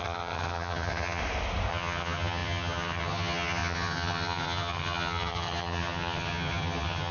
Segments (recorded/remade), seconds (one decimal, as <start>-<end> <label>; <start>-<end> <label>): 0.0-1.2 remade; 1.2-1.7 recorded; 1.7-7.1 remade